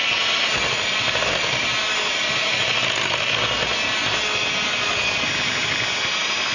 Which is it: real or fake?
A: real